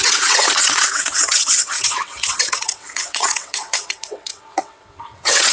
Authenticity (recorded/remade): remade